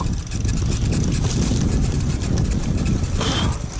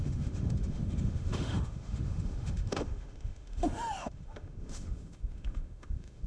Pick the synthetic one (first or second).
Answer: second